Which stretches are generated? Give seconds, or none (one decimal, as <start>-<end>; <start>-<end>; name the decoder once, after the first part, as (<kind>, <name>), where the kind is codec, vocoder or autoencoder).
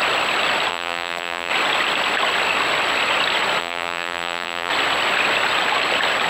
0.7-1.5 (vocoder, BigVGAN v2); 3.6-4.7